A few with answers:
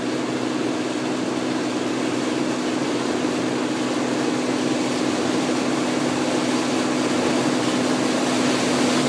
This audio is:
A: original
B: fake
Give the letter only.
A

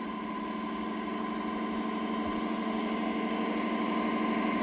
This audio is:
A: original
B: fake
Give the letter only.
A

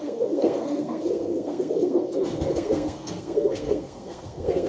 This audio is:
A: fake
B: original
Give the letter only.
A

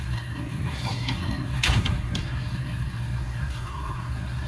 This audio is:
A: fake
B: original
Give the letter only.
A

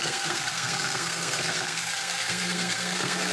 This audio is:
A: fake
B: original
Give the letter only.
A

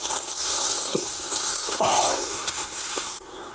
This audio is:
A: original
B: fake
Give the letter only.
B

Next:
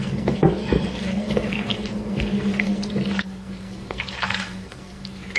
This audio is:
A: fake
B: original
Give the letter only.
A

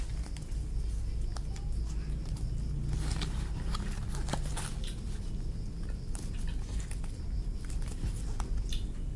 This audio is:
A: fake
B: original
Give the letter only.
B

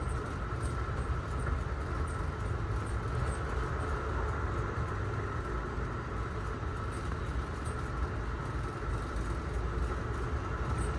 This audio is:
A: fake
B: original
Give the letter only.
B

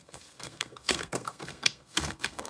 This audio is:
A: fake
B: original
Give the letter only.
A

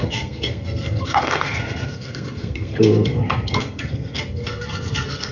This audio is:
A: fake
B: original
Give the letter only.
A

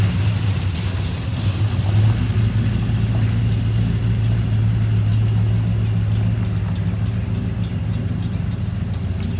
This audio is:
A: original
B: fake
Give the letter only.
A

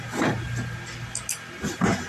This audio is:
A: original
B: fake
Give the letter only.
A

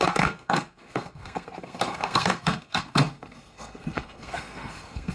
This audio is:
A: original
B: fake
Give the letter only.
B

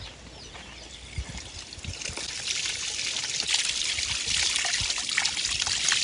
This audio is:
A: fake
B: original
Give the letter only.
B